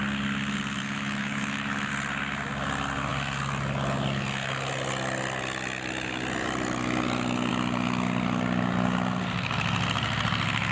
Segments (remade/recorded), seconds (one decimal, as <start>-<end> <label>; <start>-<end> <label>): 0.0-0.8 recorded; 0.8-1.9 remade; 1.9-10.7 recorded